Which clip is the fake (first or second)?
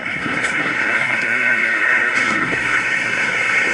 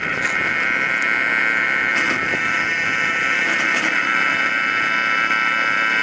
first